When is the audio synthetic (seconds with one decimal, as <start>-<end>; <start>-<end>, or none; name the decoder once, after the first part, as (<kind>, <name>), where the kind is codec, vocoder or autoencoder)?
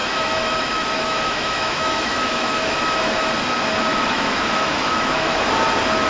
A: 0.0-3.3 (autoencoder, DAC-VAE); 3.9-5.5